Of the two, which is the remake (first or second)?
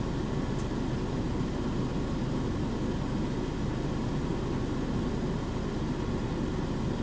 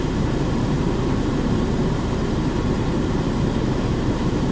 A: second